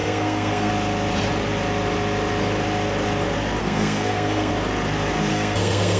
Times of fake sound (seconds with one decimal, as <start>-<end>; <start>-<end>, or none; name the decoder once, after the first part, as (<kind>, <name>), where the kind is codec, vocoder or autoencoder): 0.0-0.7 (codec, SNAC); 3.6-4.5; 5.3-6.0